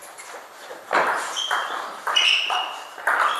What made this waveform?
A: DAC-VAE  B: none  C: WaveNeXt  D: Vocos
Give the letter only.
B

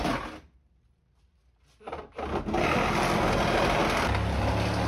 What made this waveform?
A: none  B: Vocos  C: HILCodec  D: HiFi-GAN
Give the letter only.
A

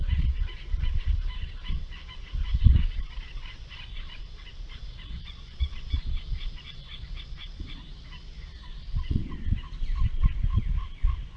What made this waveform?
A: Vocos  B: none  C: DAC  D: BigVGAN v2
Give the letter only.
A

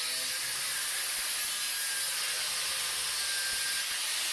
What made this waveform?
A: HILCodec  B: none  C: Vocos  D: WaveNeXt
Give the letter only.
B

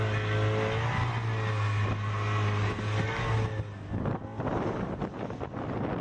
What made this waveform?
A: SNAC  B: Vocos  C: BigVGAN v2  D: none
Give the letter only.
D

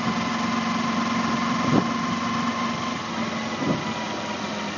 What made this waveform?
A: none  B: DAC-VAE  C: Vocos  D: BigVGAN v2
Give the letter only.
A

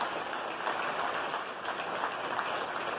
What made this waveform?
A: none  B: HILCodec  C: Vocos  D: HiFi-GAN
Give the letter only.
A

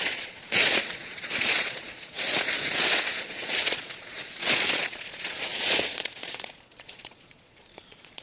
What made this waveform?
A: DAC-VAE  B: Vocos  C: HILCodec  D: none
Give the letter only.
B